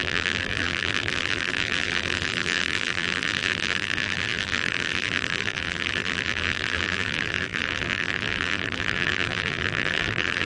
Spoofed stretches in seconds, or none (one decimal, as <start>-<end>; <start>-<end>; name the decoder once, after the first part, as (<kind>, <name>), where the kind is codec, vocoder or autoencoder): 0.0-10.4 (vocoder, BigVGAN v2)